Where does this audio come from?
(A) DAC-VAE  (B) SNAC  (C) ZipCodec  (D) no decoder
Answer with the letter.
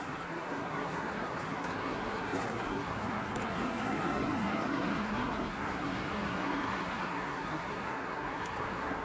B